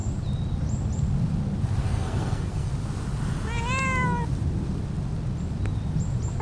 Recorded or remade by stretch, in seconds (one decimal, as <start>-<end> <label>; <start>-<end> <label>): 0.0-1.8 recorded; 1.8-2.7 remade; 2.7-6.4 recorded